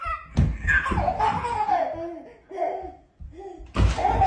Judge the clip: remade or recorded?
recorded